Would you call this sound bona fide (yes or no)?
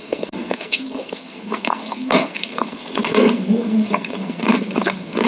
no